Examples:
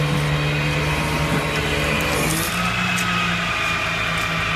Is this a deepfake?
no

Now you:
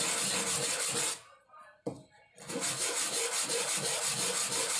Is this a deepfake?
no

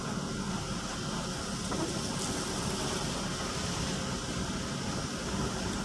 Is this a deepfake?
no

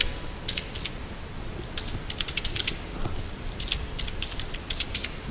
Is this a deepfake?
no